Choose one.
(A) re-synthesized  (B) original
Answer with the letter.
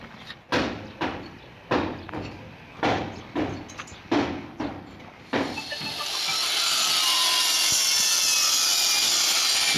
B